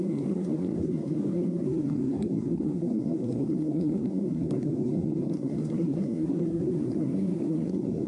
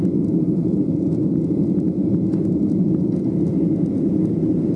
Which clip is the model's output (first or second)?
first